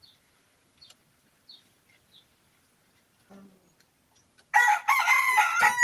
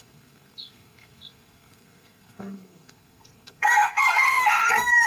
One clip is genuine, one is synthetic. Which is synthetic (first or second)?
second